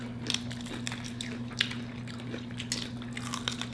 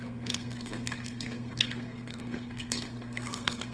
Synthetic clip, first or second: second